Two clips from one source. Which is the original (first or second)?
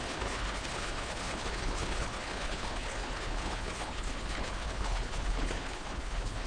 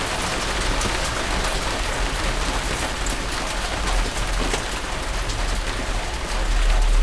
second